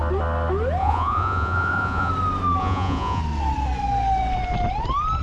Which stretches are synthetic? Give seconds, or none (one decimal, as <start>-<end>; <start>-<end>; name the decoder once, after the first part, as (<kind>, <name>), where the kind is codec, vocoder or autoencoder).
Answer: 0.8-2.1 (vocoder, Vocos); 2.6-3.2